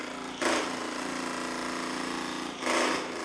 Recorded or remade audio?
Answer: recorded